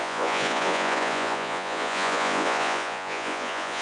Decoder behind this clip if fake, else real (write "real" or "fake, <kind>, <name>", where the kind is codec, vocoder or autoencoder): fake, vocoder, Vocos